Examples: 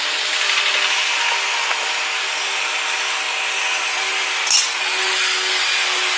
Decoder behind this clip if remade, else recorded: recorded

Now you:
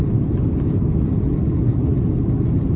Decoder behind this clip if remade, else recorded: recorded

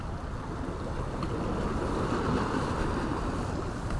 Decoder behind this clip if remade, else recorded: recorded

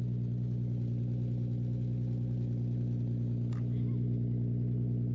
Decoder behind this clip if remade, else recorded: recorded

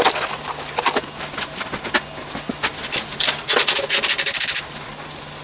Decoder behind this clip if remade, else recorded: recorded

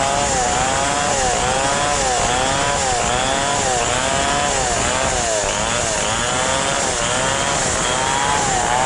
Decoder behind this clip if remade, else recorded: recorded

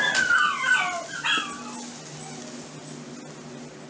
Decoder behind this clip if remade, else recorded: recorded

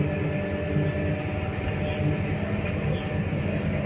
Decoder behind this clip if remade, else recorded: recorded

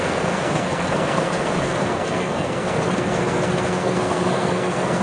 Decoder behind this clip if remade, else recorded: remade, codec, SNAC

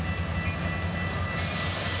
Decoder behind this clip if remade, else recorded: recorded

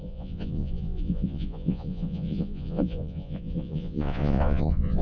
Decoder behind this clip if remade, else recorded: remade, vocoder, Vocos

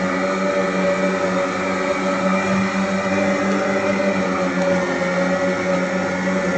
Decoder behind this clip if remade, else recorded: recorded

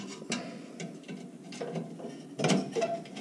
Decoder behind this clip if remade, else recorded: recorded